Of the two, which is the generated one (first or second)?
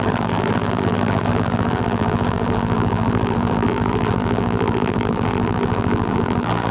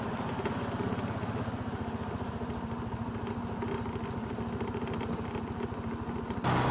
first